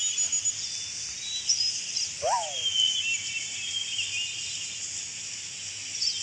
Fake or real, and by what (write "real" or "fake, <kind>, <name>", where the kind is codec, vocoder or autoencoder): real